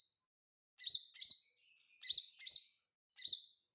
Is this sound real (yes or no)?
yes